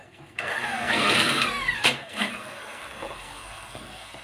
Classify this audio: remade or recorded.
remade